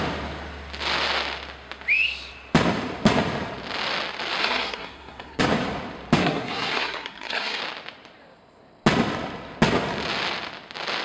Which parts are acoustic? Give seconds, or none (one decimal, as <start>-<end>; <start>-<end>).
0.0-4.4; 5.4-6.2; 7.6-11.0